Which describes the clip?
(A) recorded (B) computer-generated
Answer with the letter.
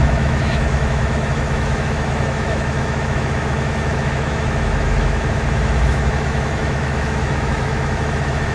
B